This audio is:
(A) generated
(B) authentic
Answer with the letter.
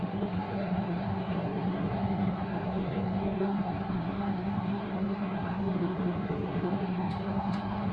A